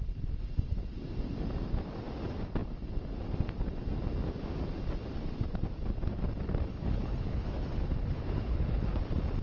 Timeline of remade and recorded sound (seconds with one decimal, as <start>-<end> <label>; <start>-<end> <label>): 0.0-6.7 recorded; 6.7-8.8 remade; 8.8-9.4 recorded